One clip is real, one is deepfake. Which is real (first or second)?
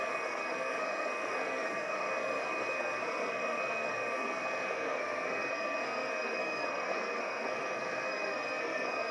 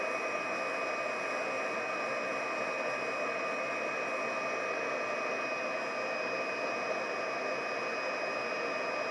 second